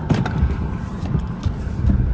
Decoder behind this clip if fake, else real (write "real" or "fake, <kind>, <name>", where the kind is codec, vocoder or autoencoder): real